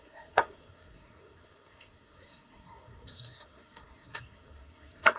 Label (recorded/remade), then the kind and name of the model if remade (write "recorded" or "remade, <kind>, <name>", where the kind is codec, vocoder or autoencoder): remade, codec, SNAC